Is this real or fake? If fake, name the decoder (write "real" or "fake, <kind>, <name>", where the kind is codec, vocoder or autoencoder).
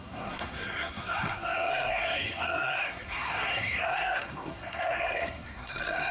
fake, codec, SNAC